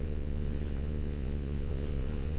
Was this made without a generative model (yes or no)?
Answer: no